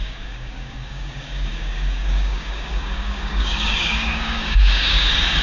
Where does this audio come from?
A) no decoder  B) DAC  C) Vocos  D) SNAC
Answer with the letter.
B